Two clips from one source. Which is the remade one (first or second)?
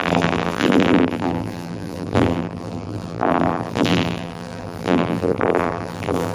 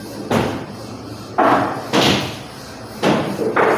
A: first